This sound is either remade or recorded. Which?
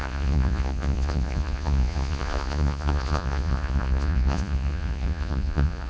remade